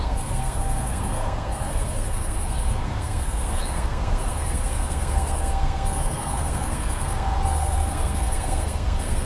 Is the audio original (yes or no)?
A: no